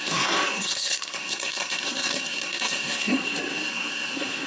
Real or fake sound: fake